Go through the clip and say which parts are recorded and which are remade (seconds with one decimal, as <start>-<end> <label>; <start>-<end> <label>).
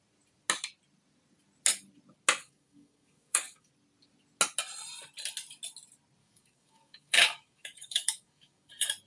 0.0-2.4 recorded; 2.4-3.7 remade; 3.7-6.2 recorded; 6.2-8.7 remade; 8.7-9.1 recorded